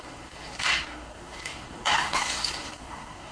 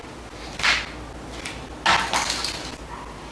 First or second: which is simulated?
first